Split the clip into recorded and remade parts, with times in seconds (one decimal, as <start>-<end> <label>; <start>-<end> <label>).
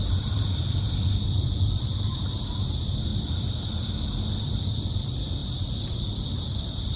0.0-3.1 remade; 3.1-4.6 recorded; 4.6-7.0 remade